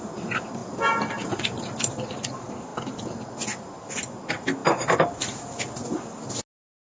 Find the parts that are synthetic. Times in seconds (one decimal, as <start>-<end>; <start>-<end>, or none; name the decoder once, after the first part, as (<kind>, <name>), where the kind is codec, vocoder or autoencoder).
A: none